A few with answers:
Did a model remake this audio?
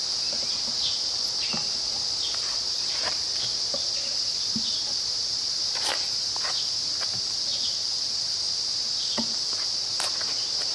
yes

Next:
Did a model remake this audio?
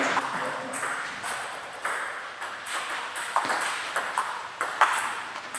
yes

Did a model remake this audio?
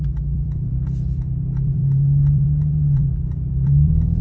yes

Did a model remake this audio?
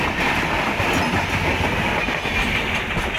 no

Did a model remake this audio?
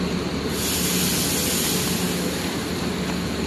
no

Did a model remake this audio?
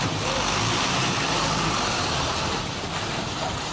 yes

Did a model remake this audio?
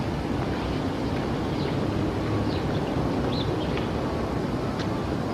no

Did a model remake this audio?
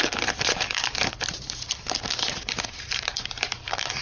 yes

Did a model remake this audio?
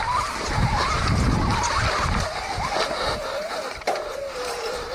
yes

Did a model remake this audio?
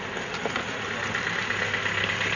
no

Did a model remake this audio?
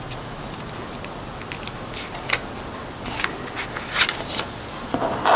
no